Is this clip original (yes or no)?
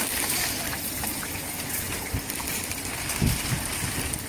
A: yes